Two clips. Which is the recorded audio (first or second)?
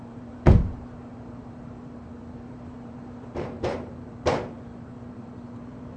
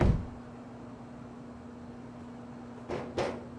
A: second